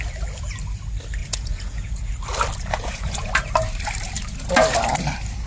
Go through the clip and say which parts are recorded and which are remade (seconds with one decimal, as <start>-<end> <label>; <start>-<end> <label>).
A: 0.0-1.2 recorded; 1.2-2.1 remade; 2.1-2.7 recorded; 2.7-3.3 remade; 3.3-5.5 recorded